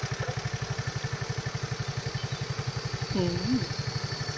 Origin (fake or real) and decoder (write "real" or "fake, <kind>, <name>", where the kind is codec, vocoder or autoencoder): real